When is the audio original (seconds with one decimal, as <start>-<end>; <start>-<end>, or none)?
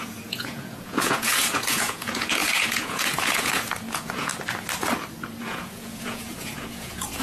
4.3-5.4